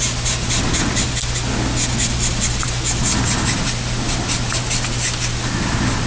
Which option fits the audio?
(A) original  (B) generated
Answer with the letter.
A